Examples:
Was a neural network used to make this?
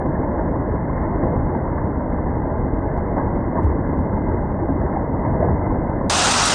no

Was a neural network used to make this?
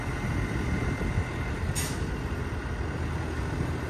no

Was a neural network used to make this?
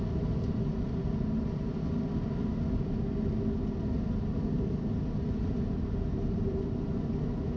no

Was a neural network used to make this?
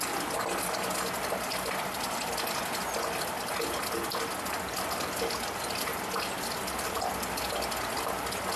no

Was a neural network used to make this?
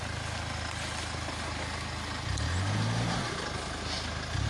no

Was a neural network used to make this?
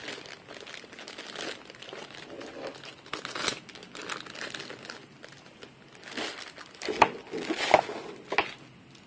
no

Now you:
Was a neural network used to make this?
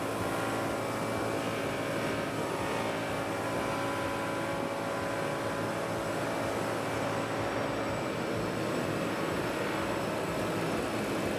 no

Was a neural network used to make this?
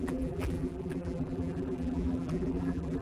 yes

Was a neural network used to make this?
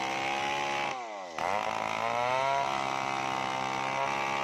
no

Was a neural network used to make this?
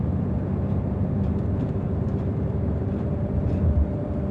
yes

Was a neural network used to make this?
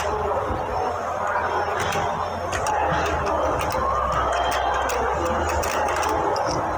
no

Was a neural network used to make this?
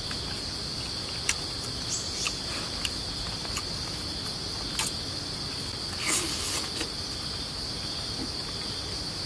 no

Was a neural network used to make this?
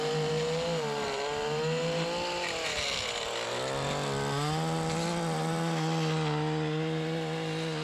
no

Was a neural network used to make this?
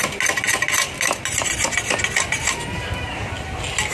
no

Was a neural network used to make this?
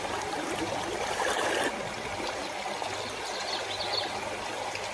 no